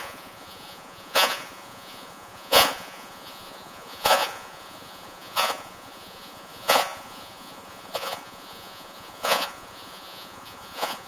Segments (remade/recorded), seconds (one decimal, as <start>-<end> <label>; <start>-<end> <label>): 0.0-11.1 remade